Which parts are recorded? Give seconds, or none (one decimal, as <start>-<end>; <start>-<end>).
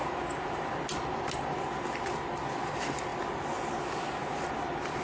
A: 0.0-5.0